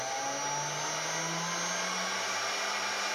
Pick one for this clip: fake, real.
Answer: real